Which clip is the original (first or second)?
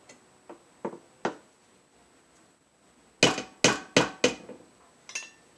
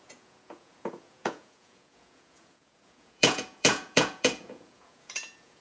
first